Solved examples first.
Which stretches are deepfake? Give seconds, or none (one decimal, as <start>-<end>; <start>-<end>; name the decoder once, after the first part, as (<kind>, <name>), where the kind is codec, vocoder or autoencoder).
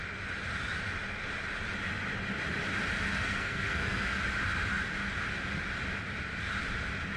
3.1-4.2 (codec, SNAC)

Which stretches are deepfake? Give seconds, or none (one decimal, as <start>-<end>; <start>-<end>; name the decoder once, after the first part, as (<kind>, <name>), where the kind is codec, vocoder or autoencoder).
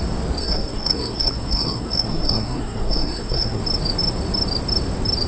0.4-3.6 (codec, SNAC)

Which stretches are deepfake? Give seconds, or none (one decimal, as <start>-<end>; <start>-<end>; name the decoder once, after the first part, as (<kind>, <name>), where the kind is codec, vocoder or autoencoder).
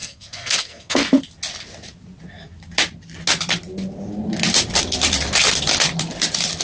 0.0-1.2 (codec, SNAC)